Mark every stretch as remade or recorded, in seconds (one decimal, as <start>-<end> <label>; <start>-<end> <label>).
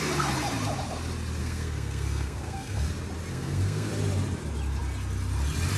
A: 0.0-1.4 recorded; 1.4-2.9 remade; 2.9-3.3 recorded; 3.3-3.9 remade; 3.9-5.8 recorded